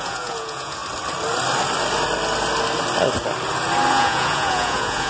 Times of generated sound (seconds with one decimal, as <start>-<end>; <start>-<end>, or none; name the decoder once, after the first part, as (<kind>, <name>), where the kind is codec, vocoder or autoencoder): 0.0-0.8 (vocoder, Vocos); 3.9-5.1